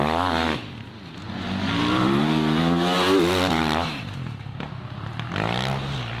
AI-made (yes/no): no